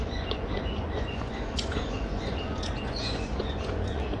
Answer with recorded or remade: remade